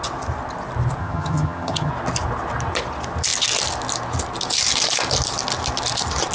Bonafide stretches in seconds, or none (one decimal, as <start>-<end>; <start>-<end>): 0.0-1.0; 1.9-6.3